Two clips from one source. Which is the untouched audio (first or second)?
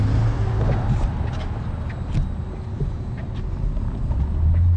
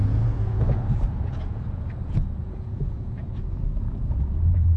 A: first